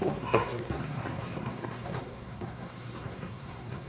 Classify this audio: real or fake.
fake